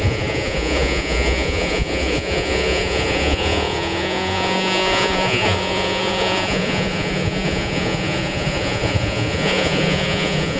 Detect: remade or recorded remade